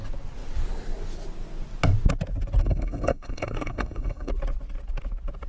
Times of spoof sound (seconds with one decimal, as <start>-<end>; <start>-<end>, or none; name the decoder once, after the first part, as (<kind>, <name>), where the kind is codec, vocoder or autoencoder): 2.6-4.3 (codec, SNAC)